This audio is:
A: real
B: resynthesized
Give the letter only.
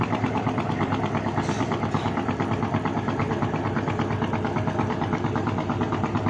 A